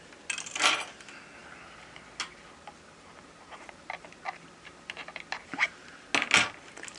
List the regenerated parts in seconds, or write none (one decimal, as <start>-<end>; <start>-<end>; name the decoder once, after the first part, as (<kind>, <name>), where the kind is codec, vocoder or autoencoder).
none